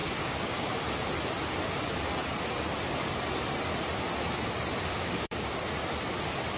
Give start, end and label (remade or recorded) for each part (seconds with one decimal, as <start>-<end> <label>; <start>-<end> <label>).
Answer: 0.0-0.8 remade; 0.8-4.9 recorded; 4.9-5.5 remade; 5.5-6.6 recorded